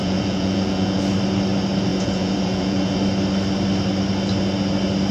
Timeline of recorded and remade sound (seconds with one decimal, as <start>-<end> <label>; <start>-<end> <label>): 0.0-1.0 remade; 1.0-1.9 recorded; 1.9-3.0 remade; 3.0-5.1 recorded